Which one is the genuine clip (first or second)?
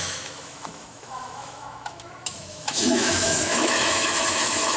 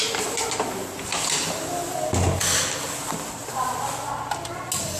second